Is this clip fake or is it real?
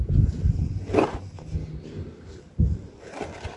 real